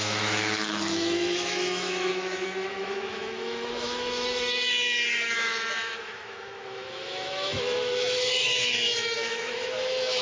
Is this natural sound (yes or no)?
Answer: no